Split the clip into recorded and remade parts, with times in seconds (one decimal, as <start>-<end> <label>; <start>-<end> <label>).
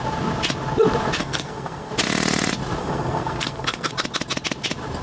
0.0-1.2 recorded; 1.2-1.9 remade; 1.9-2.8 recorded; 2.8-3.9 remade; 3.9-5.0 recorded